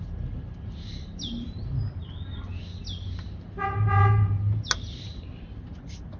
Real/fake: real